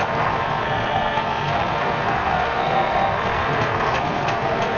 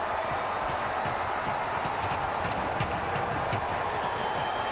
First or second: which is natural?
second